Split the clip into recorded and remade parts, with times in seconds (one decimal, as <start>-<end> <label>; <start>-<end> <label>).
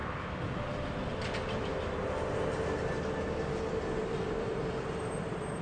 0.0-0.7 recorded; 0.7-1.1 remade; 1.1-4.0 recorded; 4.0-5.6 remade